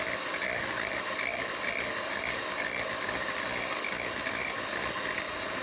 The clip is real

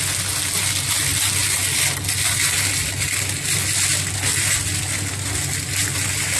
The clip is real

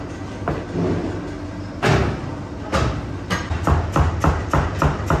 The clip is real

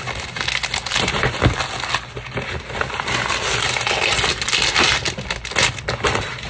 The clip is real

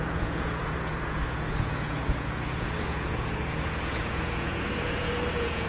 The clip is fake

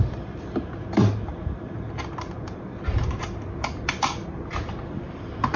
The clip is fake